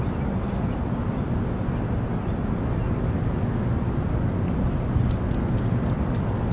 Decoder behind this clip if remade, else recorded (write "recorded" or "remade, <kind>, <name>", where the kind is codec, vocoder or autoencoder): recorded